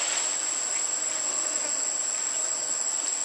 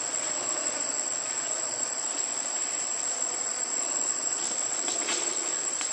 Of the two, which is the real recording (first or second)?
first